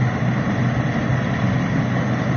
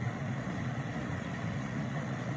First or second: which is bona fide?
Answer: first